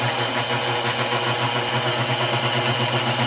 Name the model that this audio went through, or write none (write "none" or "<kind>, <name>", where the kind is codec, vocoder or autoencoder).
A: none